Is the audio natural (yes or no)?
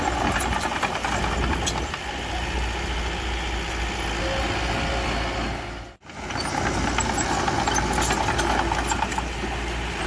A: yes